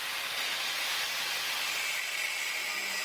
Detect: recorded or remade recorded